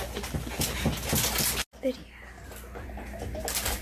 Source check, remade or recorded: recorded